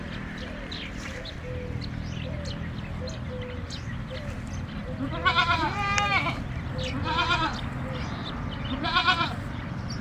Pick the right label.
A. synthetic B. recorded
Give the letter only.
B